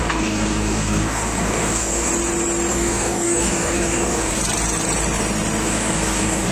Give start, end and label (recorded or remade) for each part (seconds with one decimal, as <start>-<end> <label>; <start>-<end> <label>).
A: 0.0-2.1 remade; 2.1-2.7 recorded; 2.7-4.4 remade; 4.4-5.6 recorded; 5.6-6.5 remade